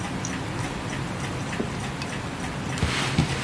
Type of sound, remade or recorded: recorded